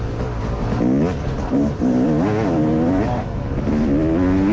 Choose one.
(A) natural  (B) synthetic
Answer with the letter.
A